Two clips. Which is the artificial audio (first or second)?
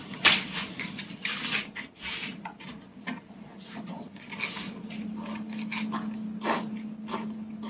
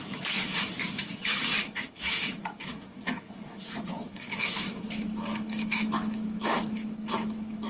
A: second